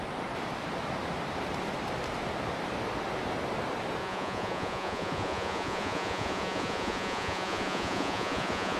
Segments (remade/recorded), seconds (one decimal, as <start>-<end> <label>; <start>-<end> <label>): 0.0-4.0 recorded; 4.0-8.8 remade